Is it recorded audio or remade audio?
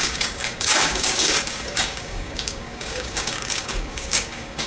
remade